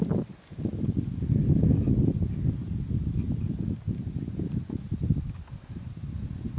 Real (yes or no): yes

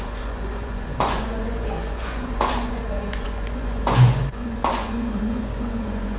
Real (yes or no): no